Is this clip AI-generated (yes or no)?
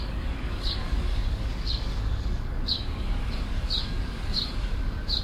yes